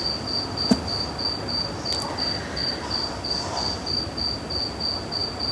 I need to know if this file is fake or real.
real